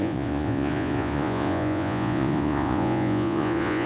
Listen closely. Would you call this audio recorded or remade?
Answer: remade